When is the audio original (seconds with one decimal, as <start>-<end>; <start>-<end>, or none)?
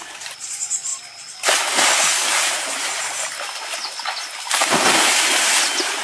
0.0-6.0